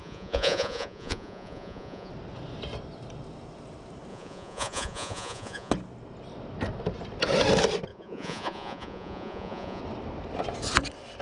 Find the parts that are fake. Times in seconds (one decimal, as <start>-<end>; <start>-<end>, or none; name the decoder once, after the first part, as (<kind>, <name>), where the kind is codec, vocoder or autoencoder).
0.0-2.1 (vocoder, Vocos); 4.1-5.7; 7.9-9.8